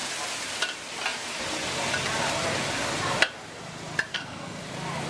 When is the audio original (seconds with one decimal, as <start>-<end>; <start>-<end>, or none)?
0.0-4.1; 4.6-5.1